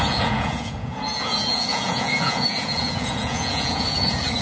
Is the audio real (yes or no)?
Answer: no